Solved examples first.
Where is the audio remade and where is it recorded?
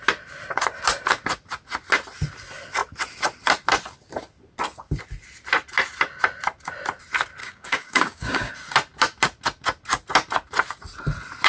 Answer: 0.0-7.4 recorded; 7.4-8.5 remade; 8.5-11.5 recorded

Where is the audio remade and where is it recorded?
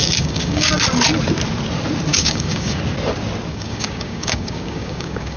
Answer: 0.0-0.7 remade; 0.7-2.1 recorded; 2.1-2.8 remade; 2.8-3.5 recorded; 3.5-5.4 remade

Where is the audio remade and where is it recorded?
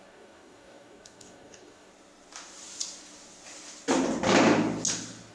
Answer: 0.0-1.9 remade; 1.9-5.3 recorded